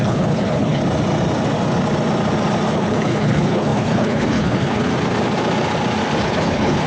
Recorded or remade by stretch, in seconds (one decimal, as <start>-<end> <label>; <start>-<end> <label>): 0.0-0.8 remade; 0.8-2.7 recorded; 2.7-4.9 remade; 4.9-6.2 recorded; 6.2-6.9 remade